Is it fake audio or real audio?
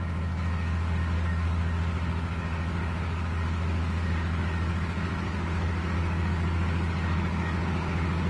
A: fake